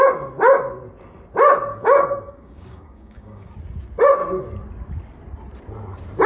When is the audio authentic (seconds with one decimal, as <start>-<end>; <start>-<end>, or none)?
0.0-1.7; 3.5-6.3